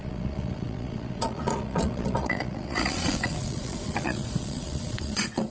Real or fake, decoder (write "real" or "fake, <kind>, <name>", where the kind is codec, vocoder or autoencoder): fake, vocoder, Vocos